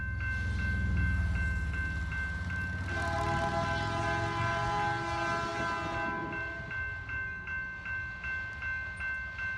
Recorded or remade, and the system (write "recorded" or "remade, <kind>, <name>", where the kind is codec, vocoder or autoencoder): recorded